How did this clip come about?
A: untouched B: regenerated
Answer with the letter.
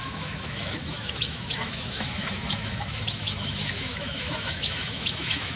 B